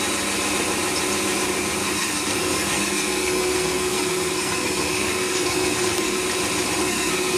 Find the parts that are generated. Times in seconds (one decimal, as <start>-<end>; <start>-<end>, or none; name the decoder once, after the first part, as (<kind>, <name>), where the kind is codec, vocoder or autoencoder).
1.8-6.2 (codec, SNAC); 6.8-7.4

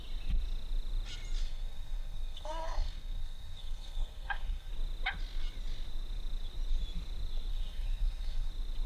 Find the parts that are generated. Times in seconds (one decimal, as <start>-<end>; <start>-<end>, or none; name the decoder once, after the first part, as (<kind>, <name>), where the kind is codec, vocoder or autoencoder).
1.4-4.7 (codec, SNAC); 7.5-8.5

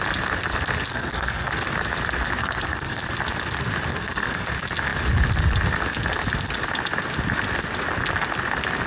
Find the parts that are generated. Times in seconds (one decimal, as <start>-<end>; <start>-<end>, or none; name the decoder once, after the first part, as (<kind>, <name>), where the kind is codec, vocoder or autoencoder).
0.9-1.6 (codec, SNAC); 2.4-3.0; 3.9-4.5

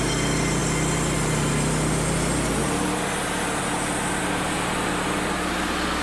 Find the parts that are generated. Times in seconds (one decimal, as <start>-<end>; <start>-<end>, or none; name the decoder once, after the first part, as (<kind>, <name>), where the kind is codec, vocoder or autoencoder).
none